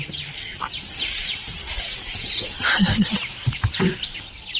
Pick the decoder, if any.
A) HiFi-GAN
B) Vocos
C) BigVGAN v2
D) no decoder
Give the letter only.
D